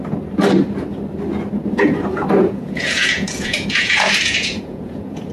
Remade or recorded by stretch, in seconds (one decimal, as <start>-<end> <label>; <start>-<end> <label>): 0.0-2.4 recorded; 2.4-5.3 remade